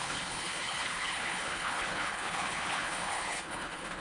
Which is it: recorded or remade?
remade